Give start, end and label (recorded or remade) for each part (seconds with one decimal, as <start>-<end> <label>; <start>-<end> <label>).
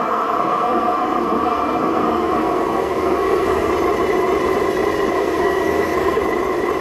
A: 0.0-3.7 remade; 3.7-5.1 recorded; 5.1-6.2 remade; 6.2-6.8 recorded